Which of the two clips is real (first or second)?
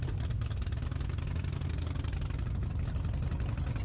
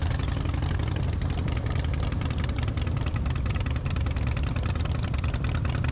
first